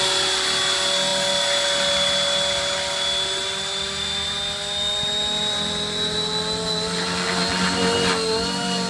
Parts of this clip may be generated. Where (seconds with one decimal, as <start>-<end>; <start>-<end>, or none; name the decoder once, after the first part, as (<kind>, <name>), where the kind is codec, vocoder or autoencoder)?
none